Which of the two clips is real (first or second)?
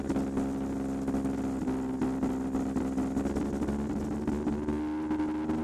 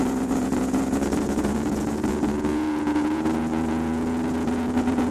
first